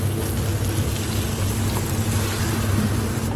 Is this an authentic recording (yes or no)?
yes